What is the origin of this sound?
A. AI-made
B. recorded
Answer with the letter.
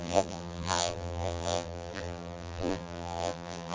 A